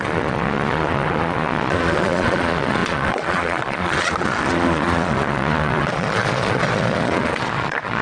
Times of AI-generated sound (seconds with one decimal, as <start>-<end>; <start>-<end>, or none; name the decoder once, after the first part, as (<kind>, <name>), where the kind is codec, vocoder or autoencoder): 0.0-8.0 (vocoder, Vocos)